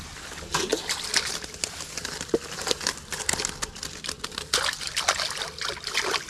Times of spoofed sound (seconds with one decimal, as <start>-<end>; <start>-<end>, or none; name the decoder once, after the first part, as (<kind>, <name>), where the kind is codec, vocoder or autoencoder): none

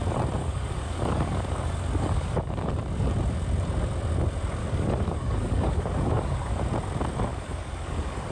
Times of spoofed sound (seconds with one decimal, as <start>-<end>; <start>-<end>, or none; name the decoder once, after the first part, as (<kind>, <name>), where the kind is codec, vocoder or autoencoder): 0.4-2.7 (codec, DAC); 4.6-6.6; 7.3-8.3

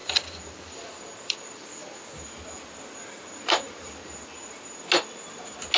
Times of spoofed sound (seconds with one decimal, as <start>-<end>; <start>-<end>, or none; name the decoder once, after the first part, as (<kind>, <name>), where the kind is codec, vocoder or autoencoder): none